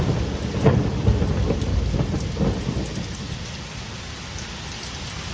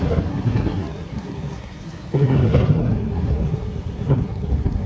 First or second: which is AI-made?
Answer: second